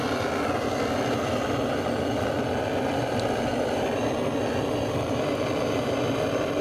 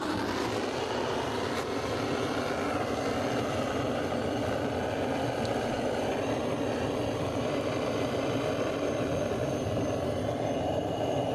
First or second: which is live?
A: first